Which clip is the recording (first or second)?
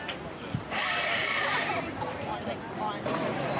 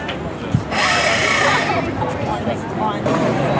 second